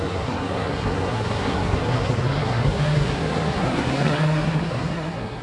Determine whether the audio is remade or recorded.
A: remade